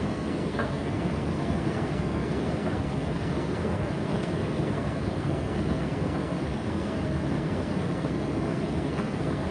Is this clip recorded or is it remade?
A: remade